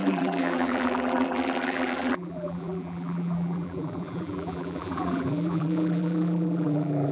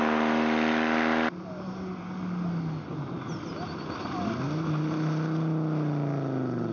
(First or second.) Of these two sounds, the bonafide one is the second